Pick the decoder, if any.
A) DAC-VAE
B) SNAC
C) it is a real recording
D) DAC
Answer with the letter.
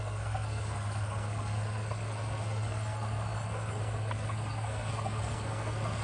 B